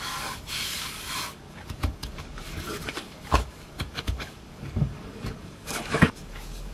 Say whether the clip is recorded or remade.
remade